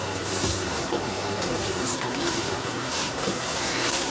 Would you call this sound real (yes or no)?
no